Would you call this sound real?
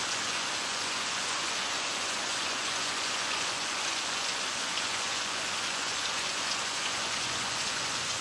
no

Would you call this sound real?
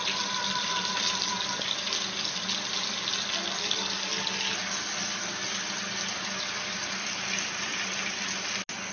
yes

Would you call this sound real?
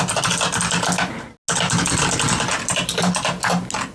yes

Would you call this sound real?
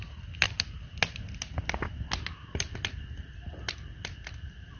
yes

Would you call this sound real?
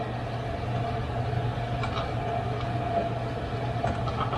yes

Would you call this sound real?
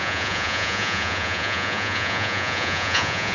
no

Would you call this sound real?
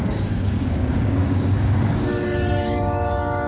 no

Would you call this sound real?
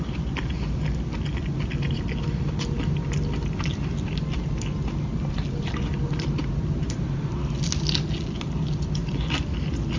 yes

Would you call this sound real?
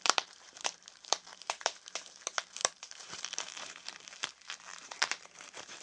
no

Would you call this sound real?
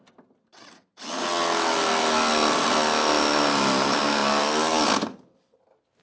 yes